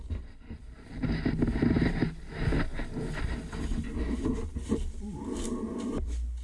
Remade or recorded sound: recorded